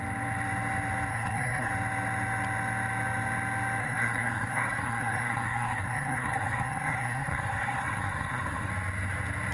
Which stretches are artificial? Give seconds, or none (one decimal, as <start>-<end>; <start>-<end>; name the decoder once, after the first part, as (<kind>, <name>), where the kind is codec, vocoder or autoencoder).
1.1-1.7 (codec, SNAC); 3.8-8.7